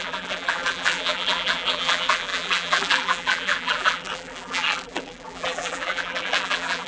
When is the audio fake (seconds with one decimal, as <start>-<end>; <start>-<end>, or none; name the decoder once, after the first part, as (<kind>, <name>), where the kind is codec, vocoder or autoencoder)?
0.0-6.9 (vocoder, BigVGAN v2)